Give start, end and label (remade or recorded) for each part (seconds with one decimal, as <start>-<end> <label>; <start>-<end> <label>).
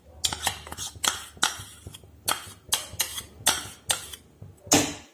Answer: 0.0-5.1 recorded